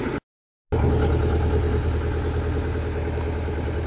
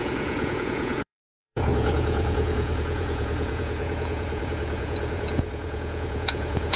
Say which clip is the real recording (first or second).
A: first